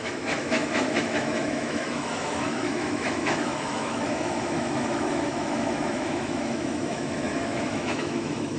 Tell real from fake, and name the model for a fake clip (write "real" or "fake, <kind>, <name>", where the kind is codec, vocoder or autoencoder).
fake, autoencoder, DAC-VAE